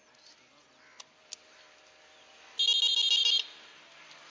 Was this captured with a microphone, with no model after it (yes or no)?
yes